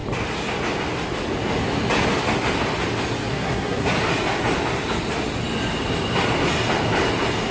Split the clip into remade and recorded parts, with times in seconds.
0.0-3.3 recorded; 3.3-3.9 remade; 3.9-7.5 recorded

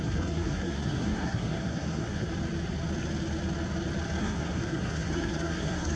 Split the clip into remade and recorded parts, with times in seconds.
0.0-2.3 remade; 2.3-4.2 recorded; 4.2-6.0 remade

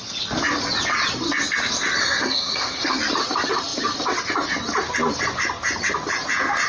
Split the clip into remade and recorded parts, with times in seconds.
0.0-2.0 recorded; 2.0-3.0 remade; 3.0-6.7 recorded

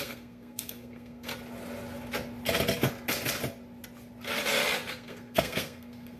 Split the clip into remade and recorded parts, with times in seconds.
0.0-1.3 remade; 1.3-4.9 recorded; 4.9-6.2 remade

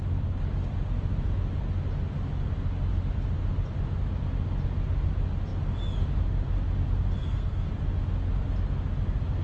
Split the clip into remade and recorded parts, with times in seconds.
0.0-7.2 recorded; 7.2-7.7 remade; 7.7-9.4 recorded

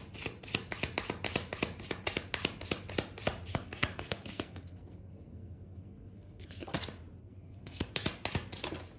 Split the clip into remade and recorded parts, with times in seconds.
0.0-3.5 recorded; 3.5-6.8 remade; 6.8-7.2 recorded; 7.2-7.9 remade; 7.9-9.0 recorded

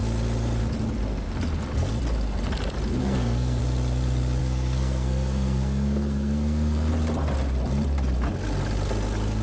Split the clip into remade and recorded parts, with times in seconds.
0.0-3.0 recorded; 3.0-3.6 remade; 3.6-4.4 recorded; 4.4-6.9 remade; 6.9-9.4 recorded